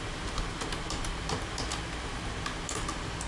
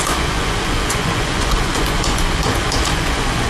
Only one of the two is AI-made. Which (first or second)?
second